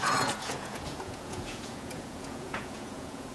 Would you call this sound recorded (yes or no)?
no